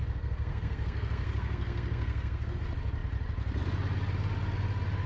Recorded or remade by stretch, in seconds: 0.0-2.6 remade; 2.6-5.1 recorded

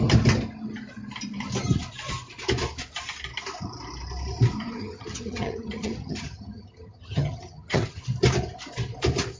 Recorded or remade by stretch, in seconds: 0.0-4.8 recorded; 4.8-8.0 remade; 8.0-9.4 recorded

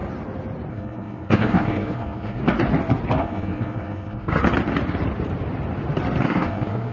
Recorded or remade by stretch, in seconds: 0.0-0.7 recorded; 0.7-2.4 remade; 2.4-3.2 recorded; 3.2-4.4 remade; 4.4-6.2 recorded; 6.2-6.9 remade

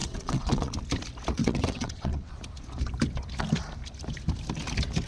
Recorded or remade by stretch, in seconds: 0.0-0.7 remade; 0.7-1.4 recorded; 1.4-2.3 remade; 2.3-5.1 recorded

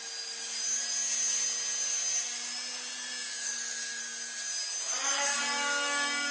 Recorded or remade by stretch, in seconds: 0.0-3.4 recorded; 3.4-4.0 remade; 4.0-4.9 recorded; 4.9-5.4 remade; 5.4-6.3 recorded